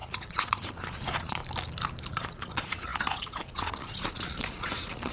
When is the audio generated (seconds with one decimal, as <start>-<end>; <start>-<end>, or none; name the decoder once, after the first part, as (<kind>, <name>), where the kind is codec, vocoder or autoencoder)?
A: 0.0-1.4 (vocoder, Vocos); 2.1-5.1